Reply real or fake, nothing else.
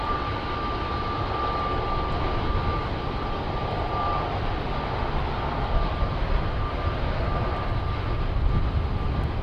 real